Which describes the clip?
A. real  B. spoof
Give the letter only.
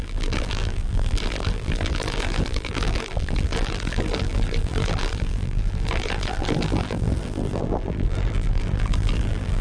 B